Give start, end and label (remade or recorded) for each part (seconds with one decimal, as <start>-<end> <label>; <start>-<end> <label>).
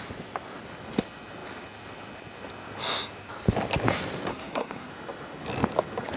0.0-4.3 recorded; 4.3-4.9 remade; 4.9-6.2 recorded